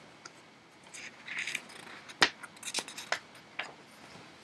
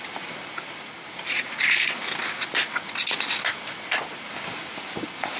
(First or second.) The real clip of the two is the first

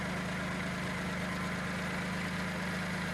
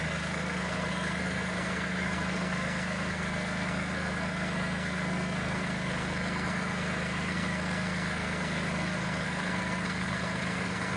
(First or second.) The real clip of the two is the first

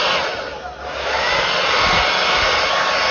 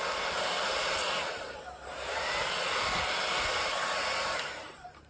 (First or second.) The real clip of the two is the first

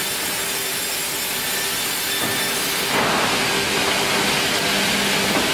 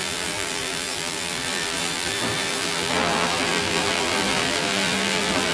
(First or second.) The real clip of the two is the first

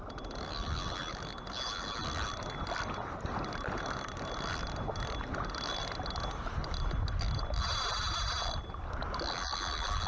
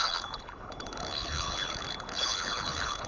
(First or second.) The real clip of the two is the first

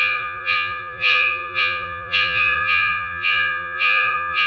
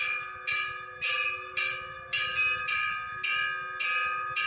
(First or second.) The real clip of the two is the second